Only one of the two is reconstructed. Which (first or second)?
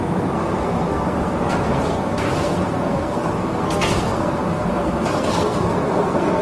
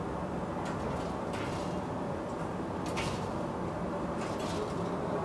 first